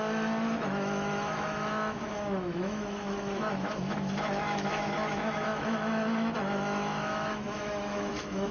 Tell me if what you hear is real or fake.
fake